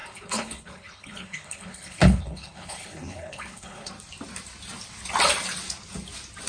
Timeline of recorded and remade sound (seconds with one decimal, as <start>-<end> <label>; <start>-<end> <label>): 0.0-3.9 remade; 3.9-6.5 recorded